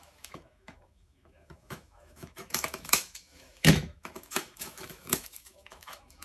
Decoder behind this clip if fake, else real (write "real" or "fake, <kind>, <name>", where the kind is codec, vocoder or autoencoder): fake, autoencoder, DAC-VAE